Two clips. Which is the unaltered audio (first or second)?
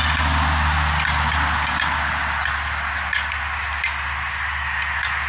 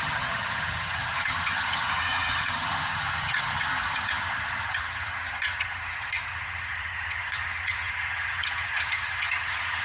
first